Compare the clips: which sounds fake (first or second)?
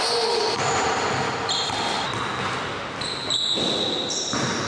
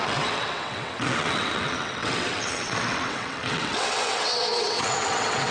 second